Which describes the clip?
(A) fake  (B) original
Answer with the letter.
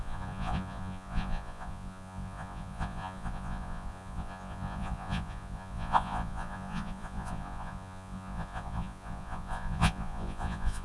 A